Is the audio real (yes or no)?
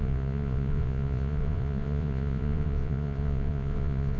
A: no